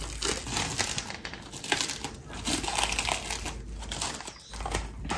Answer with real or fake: real